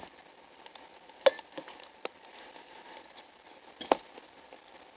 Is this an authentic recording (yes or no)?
yes